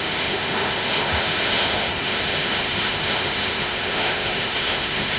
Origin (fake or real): fake